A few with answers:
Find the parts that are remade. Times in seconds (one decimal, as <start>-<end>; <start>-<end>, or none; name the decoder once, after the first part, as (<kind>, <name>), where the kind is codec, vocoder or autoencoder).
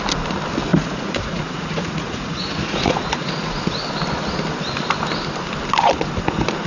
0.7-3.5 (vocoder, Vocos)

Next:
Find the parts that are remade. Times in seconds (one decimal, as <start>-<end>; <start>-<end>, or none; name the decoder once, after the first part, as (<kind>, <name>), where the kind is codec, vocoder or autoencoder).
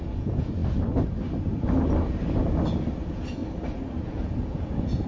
0.0-0.6 (vocoder, Vocos); 3.0-3.4; 4.0-5.1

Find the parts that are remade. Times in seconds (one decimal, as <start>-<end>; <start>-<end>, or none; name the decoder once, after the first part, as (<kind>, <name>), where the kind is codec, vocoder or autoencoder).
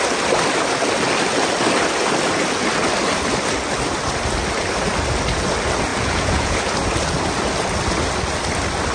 5.9-6.7 (vocoder, Vocos)